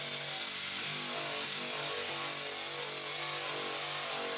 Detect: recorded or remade recorded